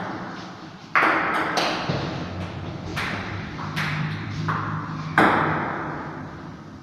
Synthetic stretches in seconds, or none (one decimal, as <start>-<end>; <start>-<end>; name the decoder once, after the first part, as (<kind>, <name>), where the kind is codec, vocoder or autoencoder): 2.9-4.4 (vocoder, BigVGAN v2)